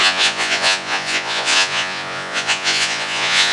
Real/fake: fake